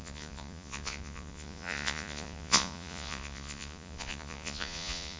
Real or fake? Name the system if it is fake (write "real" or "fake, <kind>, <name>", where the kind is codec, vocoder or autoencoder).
fake, vocoder, Vocos